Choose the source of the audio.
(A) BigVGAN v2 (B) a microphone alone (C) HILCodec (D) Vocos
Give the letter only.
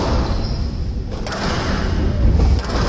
B